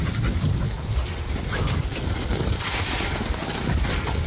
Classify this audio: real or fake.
real